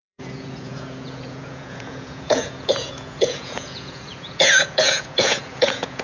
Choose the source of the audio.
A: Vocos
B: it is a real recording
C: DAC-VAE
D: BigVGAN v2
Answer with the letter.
A